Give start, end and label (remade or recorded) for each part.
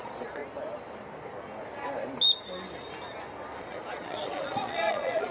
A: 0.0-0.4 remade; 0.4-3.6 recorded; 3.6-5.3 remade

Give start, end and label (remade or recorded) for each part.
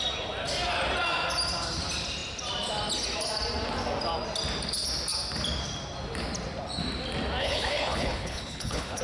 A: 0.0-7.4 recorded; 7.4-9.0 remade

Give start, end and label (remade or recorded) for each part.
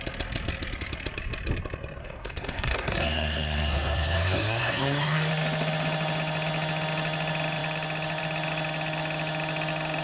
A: 0.0-2.0 recorded; 2.0-5.3 remade; 5.3-10.0 recorded